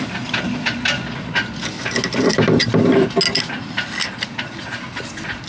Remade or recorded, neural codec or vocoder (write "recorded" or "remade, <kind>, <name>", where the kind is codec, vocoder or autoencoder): recorded